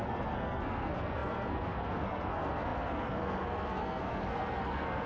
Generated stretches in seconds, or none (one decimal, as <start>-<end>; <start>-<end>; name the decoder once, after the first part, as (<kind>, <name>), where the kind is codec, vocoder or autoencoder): 0.0-5.1 (codec, SNAC)